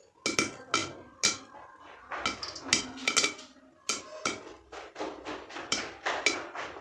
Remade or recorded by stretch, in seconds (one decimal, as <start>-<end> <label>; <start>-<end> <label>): 0.0-6.8 recorded